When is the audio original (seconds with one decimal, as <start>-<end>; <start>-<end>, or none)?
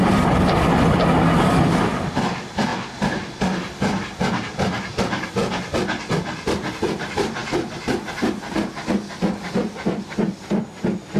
0.0-2.7; 3.3-11.2